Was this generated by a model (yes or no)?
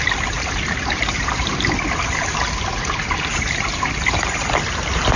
no